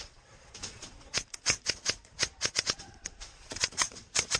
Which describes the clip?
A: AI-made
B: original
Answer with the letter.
A